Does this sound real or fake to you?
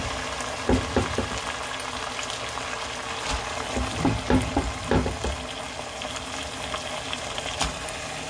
real